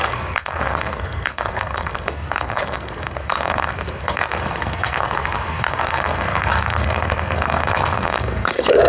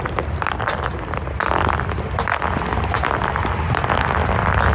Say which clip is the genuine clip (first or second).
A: second